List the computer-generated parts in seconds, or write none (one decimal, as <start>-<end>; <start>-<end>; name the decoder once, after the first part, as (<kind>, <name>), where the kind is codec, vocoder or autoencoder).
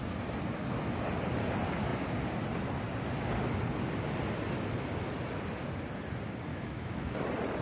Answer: 6.5-7.1 (autoencoder, DAC-VAE)